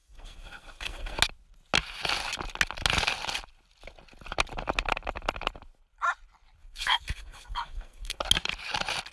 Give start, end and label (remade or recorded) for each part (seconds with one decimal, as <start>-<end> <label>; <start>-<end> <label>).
0.0-1.2 remade; 1.2-6.6 recorded; 6.6-8.2 remade; 8.2-9.1 recorded